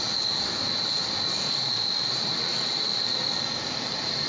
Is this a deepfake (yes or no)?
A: yes